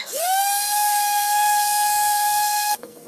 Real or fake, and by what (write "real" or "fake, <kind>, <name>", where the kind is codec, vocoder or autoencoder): fake, codec, SNAC